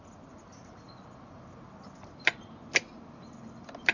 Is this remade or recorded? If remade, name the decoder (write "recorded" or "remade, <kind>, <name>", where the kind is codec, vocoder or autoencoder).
recorded